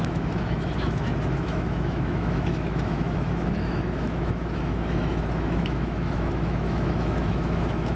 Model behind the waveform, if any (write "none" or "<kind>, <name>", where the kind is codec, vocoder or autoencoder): autoencoder, DAC-VAE